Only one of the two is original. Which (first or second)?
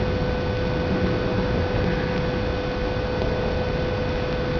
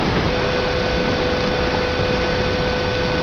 first